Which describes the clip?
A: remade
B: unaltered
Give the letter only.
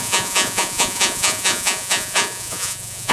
A